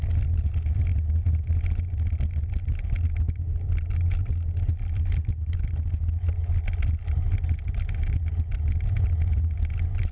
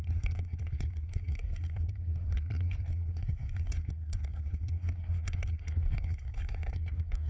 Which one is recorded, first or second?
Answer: first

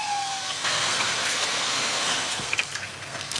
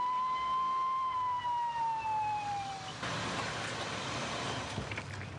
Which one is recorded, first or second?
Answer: second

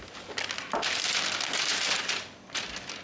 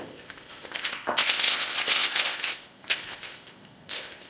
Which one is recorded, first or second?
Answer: first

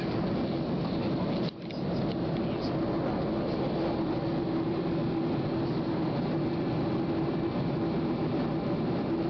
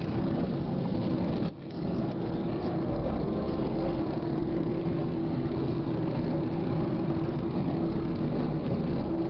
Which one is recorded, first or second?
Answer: first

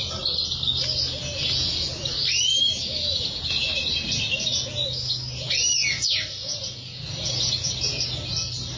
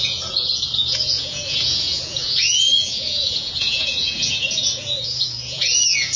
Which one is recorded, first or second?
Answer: first